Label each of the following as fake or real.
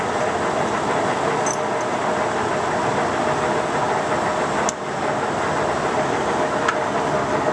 real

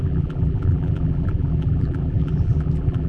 fake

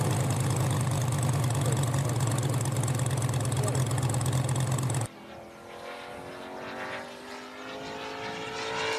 real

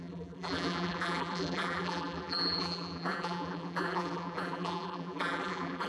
fake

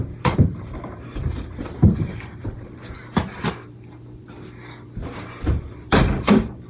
fake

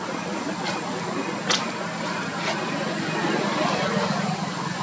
real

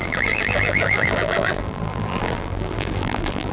fake